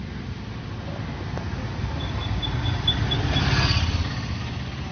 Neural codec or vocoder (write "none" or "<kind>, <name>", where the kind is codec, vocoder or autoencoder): none